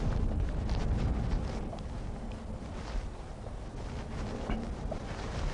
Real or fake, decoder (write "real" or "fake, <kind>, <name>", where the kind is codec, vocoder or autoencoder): real